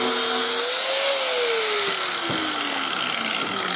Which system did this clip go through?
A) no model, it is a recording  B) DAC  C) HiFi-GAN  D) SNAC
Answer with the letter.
A